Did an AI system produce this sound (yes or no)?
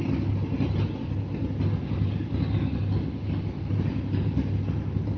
no